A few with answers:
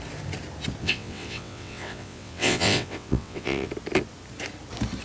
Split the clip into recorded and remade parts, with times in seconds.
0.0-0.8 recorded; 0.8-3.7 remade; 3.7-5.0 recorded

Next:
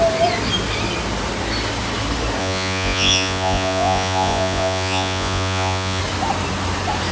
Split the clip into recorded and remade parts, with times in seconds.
0.0-2.4 recorded; 2.4-6.0 remade; 6.0-7.1 recorded

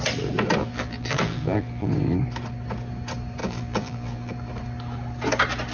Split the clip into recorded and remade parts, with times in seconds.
0.0-0.6 recorded; 0.6-1.9 remade; 1.9-3.4 recorded; 3.4-4.3 remade; 4.3-5.7 recorded

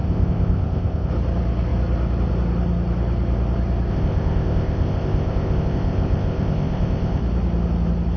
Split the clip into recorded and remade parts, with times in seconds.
0.0-1.1 remade; 1.1-3.9 recorded; 3.9-7.2 remade; 7.2-8.2 recorded

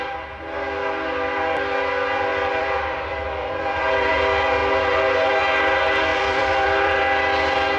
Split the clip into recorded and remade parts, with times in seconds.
0.0-2.3 recorded; 2.3-4.1 remade; 4.1-6.1 recorded; 6.1-7.0 remade; 7.0-7.8 recorded

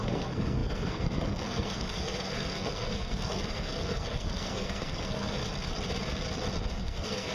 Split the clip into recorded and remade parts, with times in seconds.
0.0-5.4 remade; 5.4-6.7 recorded; 6.7-7.3 remade

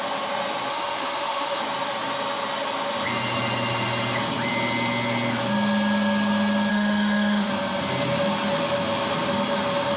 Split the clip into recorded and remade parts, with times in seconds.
0.0-0.7 recorded; 0.7-1.6 remade; 1.6-6.7 recorded; 6.7-7.5 remade; 7.5-10.0 recorded